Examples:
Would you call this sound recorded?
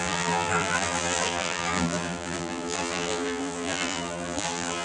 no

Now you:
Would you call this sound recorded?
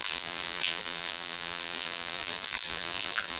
no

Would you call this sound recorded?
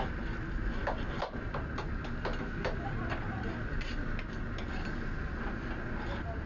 yes